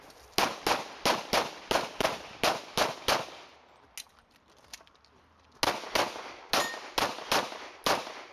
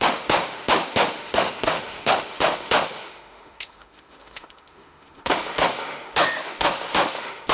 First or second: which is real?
first